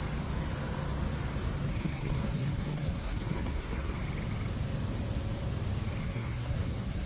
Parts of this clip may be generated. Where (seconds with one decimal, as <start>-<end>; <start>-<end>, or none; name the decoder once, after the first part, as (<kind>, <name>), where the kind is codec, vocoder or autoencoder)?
1.7-3.9 (codec, SNAC); 6.0-7.1